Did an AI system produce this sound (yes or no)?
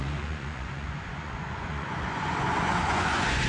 yes